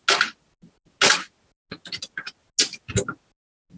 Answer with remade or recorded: recorded